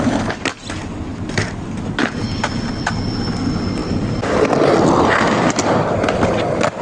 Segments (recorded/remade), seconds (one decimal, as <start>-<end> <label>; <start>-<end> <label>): 0.0-6.8 recorded